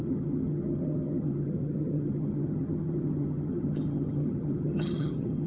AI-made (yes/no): yes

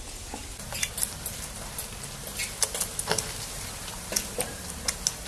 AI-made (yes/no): no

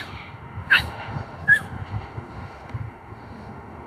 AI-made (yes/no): yes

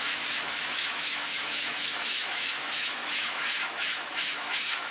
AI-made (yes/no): yes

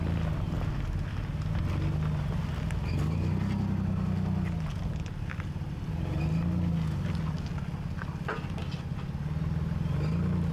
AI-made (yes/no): no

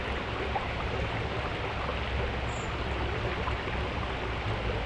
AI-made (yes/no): no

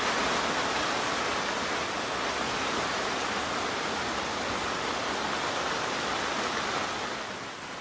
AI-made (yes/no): no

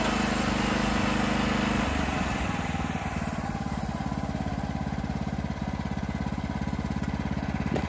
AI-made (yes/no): no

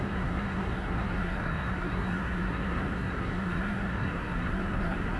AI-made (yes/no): yes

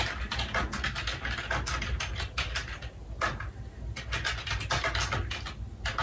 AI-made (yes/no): no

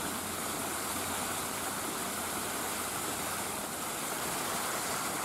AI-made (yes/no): no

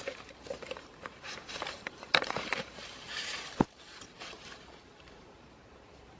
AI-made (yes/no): yes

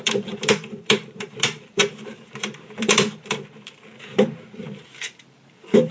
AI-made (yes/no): yes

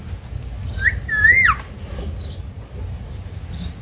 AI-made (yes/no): no